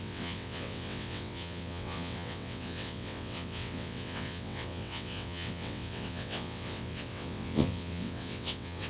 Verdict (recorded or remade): remade